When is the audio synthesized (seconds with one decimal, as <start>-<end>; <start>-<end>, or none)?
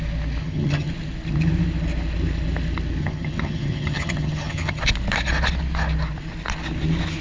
0.4-0.9; 3.0-4.8